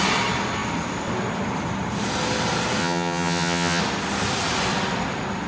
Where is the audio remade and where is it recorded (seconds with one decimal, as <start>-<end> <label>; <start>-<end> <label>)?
0.0-2.8 recorded; 2.8-3.8 remade; 3.8-5.5 recorded